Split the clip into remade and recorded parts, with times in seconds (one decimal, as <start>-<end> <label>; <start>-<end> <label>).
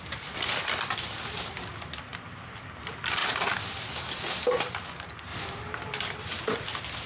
0.0-7.1 recorded